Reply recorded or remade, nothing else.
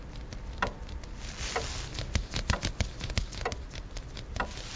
recorded